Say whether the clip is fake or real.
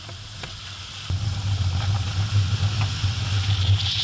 real